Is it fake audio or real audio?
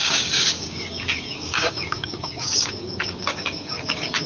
fake